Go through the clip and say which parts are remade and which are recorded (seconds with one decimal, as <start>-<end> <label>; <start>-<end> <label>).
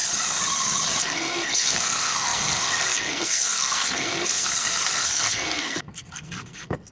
0.0-1.0 recorded; 1.0-6.9 remade